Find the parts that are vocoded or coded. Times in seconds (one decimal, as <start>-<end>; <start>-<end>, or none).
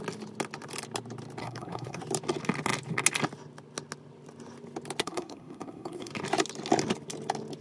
1.4-2.0; 5.0-6.1